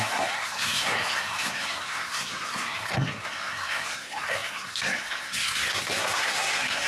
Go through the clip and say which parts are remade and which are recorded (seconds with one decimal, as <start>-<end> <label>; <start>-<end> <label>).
0.0-6.9 remade